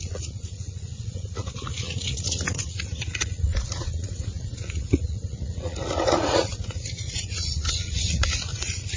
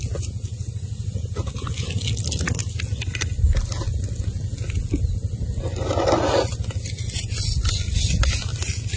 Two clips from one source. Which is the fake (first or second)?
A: first